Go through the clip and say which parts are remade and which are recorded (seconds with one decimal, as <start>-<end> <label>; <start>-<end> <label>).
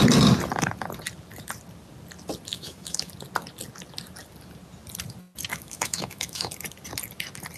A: 0.0-2.5 recorded; 2.5-3.1 remade; 3.1-5.5 recorded; 5.5-6.5 remade; 6.5-7.6 recorded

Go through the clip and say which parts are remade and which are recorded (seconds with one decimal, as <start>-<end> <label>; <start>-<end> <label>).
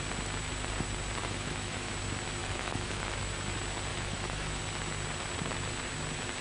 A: 0.0-1.2 recorded; 1.2-1.9 remade; 1.9-2.4 recorded; 2.4-3.2 remade; 3.2-3.9 recorded; 3.9-4.6 remade; 4.6-6.4 recorded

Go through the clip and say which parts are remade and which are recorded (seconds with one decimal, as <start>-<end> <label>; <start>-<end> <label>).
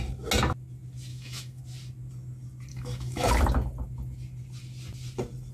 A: 0.0-1.1 recorded; 1.1-1.6 remade; 1.6-2.7 recorded; 2.7-3.3 remade; 3.3-5.5 recorded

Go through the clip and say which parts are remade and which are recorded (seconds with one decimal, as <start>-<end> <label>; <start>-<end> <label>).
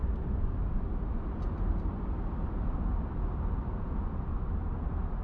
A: 0.0-5.2 recorded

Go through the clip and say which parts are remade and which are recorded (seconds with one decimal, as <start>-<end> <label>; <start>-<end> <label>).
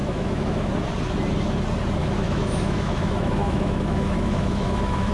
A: 0.0-0.7 remade; 0.7-2.0 recorded; 2.0-5.1 remade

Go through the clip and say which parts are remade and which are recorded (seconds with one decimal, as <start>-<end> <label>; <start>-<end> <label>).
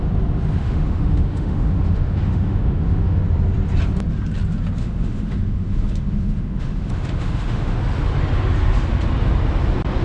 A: 0.0-0.6 recorded; 0.6-3.2 remade; 3.2-4.8 recorded; 4.8-7.8 remade; 7.8-10.0 recorded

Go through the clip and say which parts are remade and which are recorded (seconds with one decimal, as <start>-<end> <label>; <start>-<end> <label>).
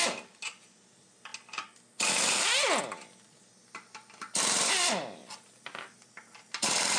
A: 0.0-7.0 recorded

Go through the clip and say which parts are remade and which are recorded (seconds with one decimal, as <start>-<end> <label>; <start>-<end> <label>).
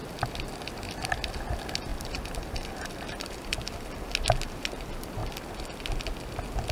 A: 0.0-6.7 recorded